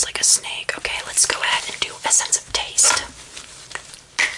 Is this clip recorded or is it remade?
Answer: recorded